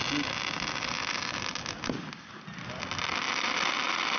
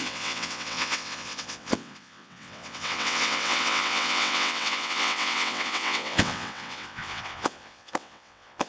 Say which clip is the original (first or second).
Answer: first